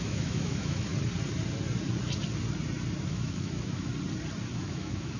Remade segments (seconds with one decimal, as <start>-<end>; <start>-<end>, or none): 0.0-0.9; 3.1-3.9; 4.5-5.2

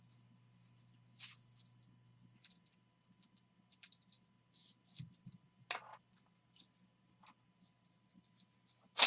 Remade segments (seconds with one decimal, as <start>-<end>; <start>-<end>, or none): none